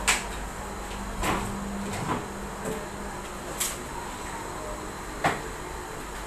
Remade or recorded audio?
recorded